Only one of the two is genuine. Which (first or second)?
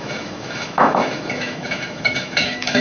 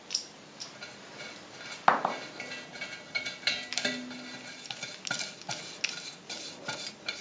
second